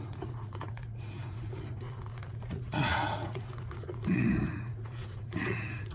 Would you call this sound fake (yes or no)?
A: yes